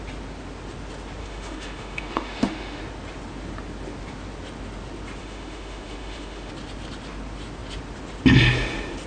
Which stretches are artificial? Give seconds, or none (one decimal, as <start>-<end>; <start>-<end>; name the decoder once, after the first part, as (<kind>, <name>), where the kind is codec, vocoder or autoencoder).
1.2-2.8 (autoencoder, DAC-VAE); 5.2-6.5